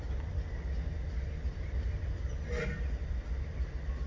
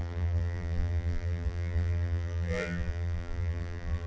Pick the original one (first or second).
first